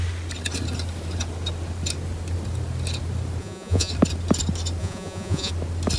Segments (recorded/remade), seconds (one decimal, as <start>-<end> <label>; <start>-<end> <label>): 0.0-3.4 recorded; 3.4-3.9 remade; 3.9-4.8 recorded; 4.8-5.5 remade; 5.5-6.0 recorded